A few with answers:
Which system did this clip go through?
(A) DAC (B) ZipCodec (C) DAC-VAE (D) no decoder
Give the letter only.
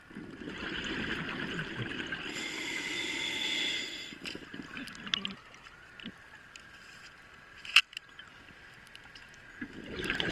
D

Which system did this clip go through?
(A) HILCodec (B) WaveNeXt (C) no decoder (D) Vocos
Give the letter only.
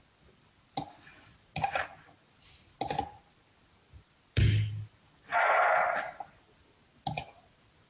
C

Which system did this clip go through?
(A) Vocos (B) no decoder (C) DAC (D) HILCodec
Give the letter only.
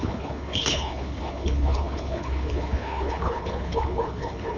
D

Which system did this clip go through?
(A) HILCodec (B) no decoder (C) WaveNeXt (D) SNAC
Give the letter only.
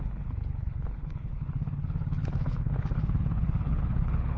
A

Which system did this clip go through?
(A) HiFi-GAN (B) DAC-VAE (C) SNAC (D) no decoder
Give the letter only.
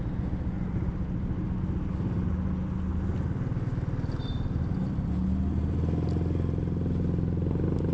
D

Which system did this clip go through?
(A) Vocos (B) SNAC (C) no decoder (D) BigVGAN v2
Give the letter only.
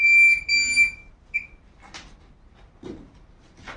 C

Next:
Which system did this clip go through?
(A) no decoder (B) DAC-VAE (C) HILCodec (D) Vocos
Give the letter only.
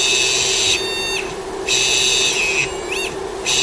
A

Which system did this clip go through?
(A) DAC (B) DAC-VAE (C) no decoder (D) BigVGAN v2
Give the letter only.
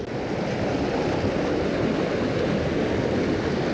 C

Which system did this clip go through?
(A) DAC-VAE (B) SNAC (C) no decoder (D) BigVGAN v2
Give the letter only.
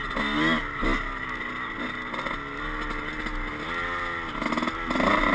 C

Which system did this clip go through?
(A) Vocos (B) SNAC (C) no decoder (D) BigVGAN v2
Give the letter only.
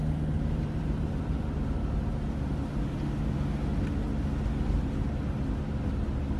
C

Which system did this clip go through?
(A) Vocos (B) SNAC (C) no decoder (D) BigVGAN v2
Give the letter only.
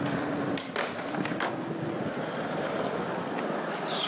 C